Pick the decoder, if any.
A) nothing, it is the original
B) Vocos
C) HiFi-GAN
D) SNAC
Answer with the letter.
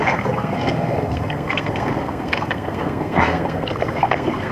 D